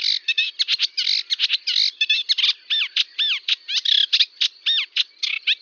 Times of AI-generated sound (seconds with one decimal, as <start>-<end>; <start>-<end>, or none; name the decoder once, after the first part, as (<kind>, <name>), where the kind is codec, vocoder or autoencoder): none